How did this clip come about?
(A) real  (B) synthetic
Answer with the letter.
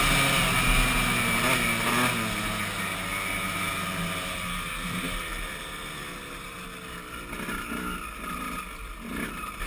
A